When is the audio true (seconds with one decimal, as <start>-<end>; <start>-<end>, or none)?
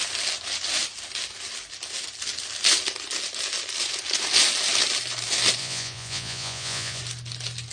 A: 0.0-5.6; 7.0-7.7